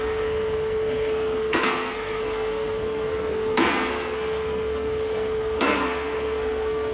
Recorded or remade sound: remade